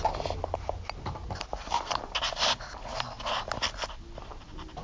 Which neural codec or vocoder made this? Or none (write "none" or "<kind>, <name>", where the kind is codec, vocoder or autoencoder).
none